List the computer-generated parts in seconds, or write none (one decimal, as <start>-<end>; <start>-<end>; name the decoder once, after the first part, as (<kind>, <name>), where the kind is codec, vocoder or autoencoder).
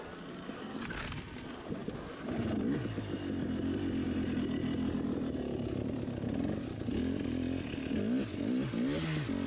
none